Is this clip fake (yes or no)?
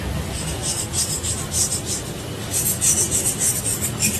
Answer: no